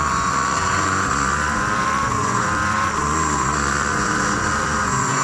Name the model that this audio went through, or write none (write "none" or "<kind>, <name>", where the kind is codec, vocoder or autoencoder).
vocoder, Vocos